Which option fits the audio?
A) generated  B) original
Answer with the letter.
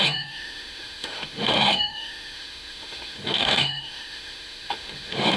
A